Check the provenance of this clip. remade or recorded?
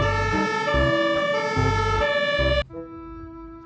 recorded